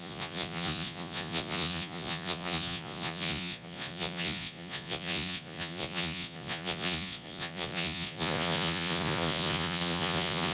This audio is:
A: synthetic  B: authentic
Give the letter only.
A